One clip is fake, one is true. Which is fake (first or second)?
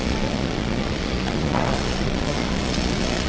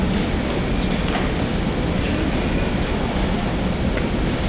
first